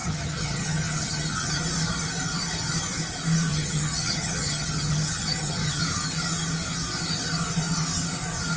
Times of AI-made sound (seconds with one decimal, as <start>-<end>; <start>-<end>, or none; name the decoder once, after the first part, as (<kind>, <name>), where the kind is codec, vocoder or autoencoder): 0.0-1.6 (vocoder, HiFi-GAN); 3.5-5.8